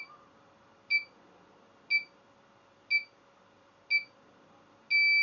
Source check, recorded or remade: recorded